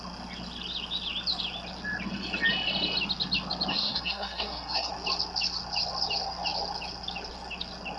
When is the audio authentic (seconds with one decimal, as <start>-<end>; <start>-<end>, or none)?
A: 0.0-3.7; 4.9-8.0